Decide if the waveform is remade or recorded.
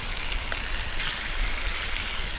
recorded